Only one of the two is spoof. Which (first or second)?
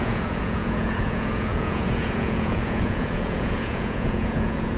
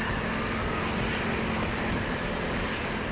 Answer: first